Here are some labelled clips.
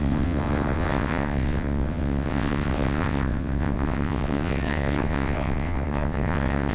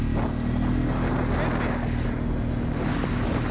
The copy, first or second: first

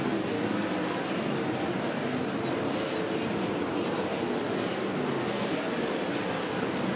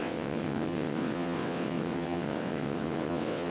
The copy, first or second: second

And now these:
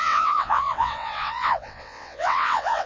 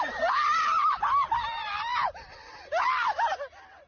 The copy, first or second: first